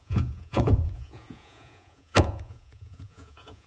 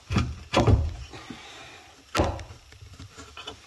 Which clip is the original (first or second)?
second